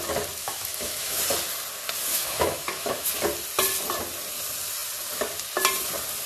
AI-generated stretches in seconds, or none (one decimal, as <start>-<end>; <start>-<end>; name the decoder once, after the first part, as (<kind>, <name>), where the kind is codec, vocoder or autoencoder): 0.4-1.2 (autoencoder, DAC-VAE); 2.1-3.1

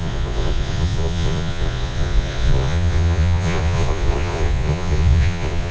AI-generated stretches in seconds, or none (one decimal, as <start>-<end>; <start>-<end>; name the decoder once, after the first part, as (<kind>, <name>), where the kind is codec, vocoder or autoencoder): 0.0-5.7 (vocoder, Vocos)